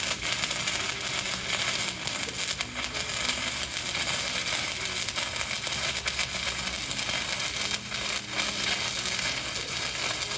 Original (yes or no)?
yes